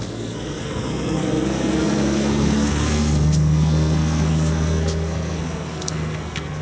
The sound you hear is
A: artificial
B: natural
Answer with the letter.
A